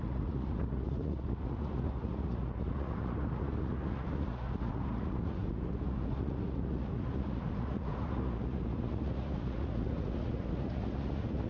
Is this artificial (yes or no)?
yes